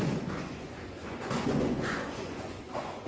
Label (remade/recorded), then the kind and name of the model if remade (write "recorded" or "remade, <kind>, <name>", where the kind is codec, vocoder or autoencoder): remade, vocoder, Vocos